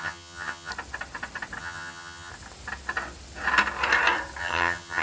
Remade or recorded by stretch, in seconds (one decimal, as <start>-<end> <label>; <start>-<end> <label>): 0.0-0.7 remade; 0.7-1.6 recorded; 1.6-2.3 remade; 2.3-4.4 recorded; 4.4-5.0 remade